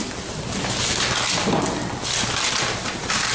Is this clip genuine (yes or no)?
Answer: yes